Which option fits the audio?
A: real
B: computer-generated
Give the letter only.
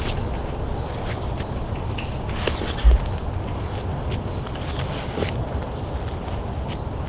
A